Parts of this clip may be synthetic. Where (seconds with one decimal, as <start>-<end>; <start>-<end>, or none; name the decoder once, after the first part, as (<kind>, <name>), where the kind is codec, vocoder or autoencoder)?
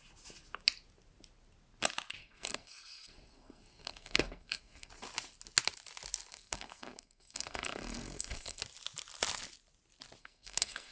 2.2-4.9 (codec, SNAC); 6.3-8.6; 10.2-10.9